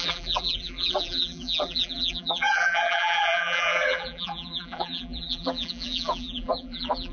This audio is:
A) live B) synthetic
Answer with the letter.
B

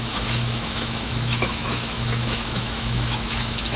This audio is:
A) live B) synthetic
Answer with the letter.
B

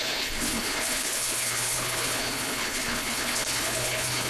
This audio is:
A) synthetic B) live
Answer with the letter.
A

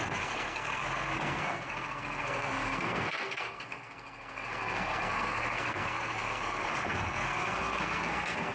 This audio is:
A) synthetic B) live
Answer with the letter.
A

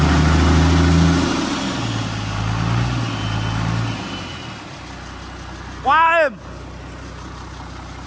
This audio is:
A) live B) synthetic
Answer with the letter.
A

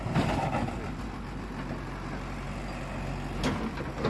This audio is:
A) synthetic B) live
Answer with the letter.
B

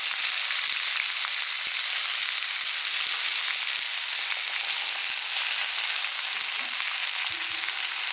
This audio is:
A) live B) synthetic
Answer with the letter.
A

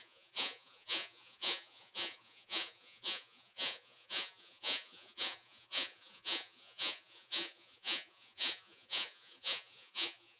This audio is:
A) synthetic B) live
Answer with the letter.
A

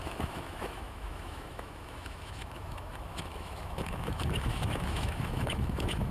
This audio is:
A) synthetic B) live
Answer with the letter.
A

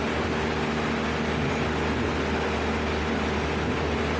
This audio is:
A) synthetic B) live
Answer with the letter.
B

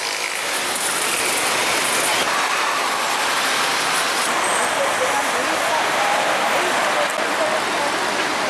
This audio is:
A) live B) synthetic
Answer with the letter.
A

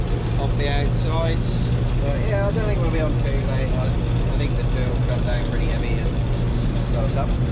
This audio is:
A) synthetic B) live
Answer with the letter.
B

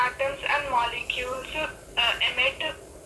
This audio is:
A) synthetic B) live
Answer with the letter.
A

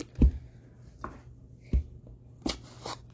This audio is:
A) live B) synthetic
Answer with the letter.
A